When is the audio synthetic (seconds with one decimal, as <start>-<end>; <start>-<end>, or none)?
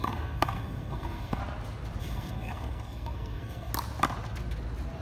0.0-1.4; 2.0-3.7